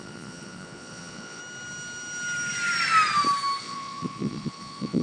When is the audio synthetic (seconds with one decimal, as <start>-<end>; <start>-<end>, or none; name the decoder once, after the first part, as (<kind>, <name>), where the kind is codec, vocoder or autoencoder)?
0.0-1.4 (vocoder, Vocos); 3.6-5.0